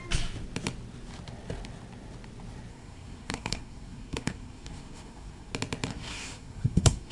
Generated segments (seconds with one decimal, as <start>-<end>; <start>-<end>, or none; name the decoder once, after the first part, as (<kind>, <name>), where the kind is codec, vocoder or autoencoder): 2.7-5.5 (codec, SNAC); 5.9-7.1